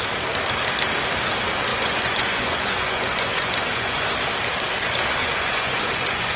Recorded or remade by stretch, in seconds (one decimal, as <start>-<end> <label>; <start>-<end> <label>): 0.0-1.7 recorded; 1.7-4.1 remade; 4.1-5.2 recorded; 5.2-6.4 remade

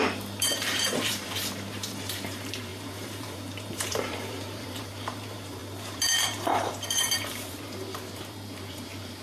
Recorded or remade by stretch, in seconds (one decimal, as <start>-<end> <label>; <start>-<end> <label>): 0.0-9.2 remade

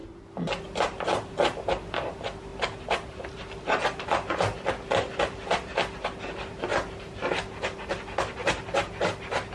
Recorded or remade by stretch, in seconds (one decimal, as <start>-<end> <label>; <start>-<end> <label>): 0.0-6.7 recorded; 6.7-9.5 remade

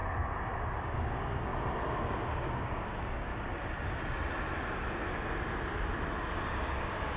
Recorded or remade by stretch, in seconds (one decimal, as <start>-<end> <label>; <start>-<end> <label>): 0.0-0.8 recorded; 0.8-1.5 remade; 1.5-2.0 recorded; 2.0-3.3 remade; 3.3-6.4 recorded; 6.4-7.2 remade

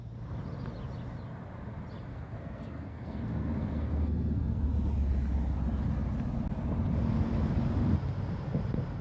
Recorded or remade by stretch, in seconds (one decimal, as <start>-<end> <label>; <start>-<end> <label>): 0.0-2.1 recorded; 2.1-4.7 remade; 4.7-9.0 recorded